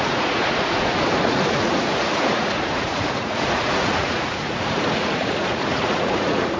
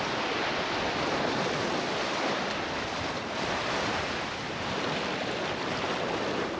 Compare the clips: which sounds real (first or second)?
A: second